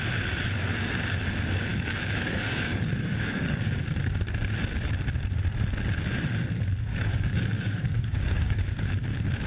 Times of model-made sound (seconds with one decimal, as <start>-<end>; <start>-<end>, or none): 1.7-3.8; 6.9-8.6

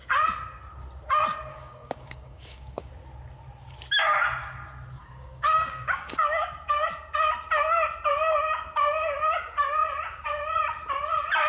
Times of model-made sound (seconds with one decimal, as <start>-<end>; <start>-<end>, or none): 1.5-2.9; 5.0-6.1

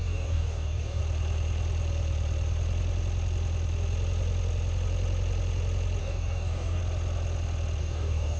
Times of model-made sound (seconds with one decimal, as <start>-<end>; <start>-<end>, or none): 0.0-1.0; 6.0-6.8; 7.8-8.4

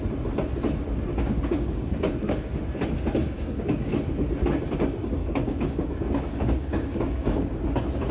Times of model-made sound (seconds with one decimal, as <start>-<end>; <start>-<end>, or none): 1.1-2.6; 3.2-3.9; 5.2-7.5

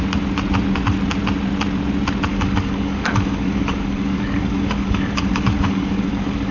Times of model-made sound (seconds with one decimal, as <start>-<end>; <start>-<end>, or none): 2.3-6.5

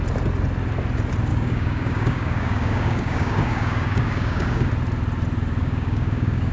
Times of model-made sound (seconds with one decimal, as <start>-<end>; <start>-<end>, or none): 1.3-4.7; 5.6-6.5